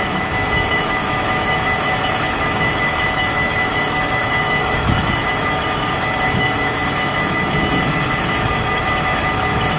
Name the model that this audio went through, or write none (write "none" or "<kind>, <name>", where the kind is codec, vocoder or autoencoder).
autoencoder, DAC-VAE